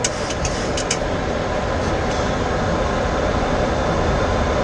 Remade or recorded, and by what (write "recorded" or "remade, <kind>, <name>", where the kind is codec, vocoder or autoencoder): recorded